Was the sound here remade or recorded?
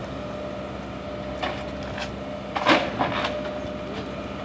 recorded